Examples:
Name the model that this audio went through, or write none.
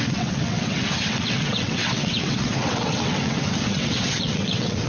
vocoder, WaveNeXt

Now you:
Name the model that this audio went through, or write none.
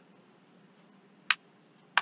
none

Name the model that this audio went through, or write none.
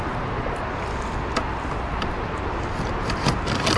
none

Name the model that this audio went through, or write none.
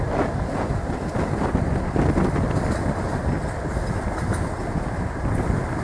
none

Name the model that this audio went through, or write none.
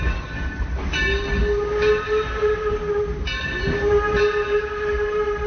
none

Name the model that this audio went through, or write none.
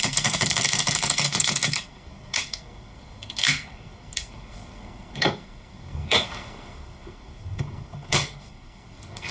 codec, SNAC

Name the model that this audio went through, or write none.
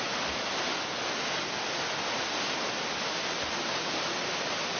none